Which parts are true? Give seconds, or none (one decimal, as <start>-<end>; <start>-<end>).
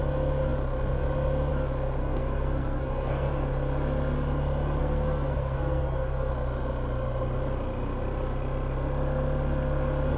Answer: 0.0-2.0; 3.3-4.8; 6.3-10.2